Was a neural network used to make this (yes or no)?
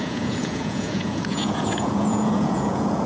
yes